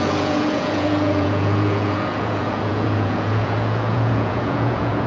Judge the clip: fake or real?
fake